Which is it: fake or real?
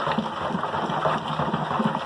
real